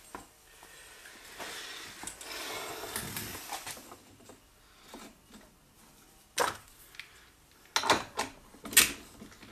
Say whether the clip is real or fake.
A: real